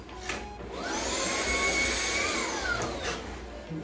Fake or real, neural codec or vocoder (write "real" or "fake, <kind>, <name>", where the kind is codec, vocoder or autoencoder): real